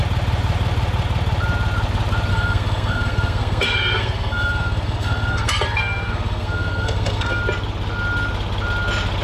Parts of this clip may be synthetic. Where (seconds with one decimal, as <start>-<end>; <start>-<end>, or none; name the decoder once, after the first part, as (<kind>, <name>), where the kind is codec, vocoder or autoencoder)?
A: 2.3-7.4 (codec, SNAC)